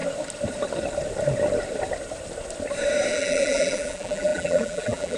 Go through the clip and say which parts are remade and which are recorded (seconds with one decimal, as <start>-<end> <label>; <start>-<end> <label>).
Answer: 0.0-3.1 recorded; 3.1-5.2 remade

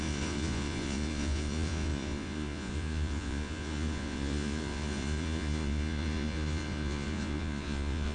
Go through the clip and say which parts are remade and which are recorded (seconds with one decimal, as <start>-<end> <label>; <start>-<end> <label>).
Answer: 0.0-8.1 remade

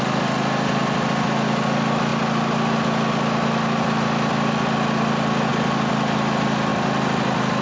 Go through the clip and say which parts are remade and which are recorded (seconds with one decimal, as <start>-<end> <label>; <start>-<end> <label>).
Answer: 0.0-7.6 recorded

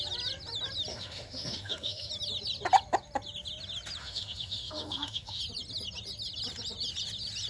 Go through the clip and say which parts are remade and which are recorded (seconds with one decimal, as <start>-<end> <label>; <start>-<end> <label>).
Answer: 0.0-0.9 recorded; 0.9-2.1 remade; 2.1-4.0 recorded; 4.0-5.4 remade; 5.4-7.5 recorded